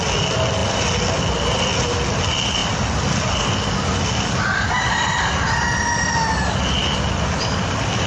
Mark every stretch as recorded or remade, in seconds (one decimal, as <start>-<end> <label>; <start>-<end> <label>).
0.0-8.1 recorded

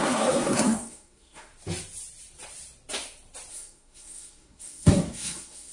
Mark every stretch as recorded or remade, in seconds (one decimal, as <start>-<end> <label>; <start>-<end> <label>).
0.0-1.5 remade; 1.5-3.5 recorded; 3.5-5.7 remade

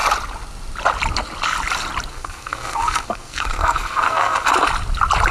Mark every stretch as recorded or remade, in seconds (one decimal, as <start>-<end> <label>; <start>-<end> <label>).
0.0-2.1 recorded; 2.1-4.5 remade; 4.5-5.3 recorded

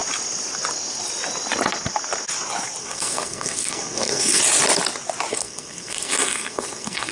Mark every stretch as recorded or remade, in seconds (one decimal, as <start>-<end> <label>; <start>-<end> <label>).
0.0-2.8 recorded; 2.8-4.4 remade; 4.4-5.3 recorded; 5.3-7.1 remade

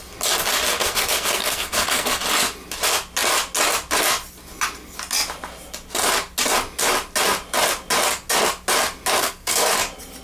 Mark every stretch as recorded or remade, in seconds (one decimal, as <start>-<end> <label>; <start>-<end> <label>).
0.0-0.7 recorded; 0.7-2.2 remade; 2.2-9.2 recorded; 9.2-9.7 remade; 9.7-10.2 recorded